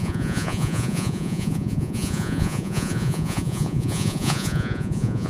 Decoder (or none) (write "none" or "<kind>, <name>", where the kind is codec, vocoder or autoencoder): vocoder, Vocos